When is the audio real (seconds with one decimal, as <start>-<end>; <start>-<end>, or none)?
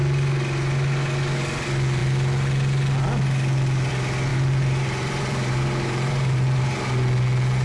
0.0-4.3; 6.6-7.6